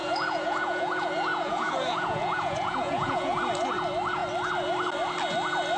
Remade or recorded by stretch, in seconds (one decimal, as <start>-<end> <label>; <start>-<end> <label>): 0.0-3.4 remade; 3.4-5.8 recorded